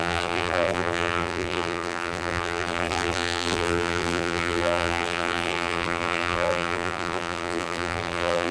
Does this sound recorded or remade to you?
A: remade